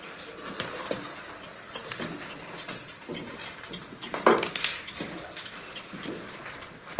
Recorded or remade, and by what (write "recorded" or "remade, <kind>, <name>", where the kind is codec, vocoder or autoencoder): recorded